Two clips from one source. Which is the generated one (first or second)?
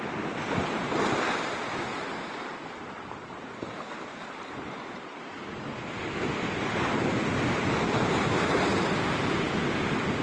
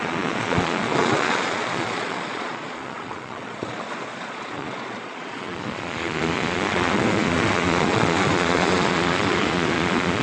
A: second